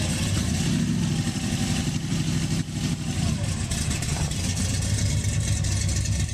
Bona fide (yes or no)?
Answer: no